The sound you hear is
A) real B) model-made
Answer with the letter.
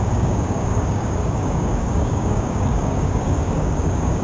B